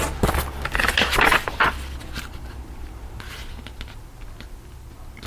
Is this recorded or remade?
recorded